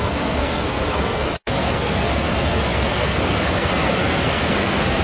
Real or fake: fake